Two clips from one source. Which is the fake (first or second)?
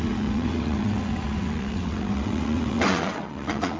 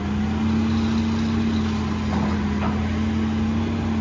first